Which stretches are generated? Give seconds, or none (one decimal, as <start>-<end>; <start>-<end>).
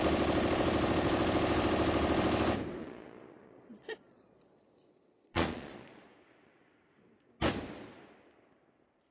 2.8-6.1